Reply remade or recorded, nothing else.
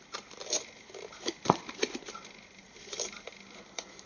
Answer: remade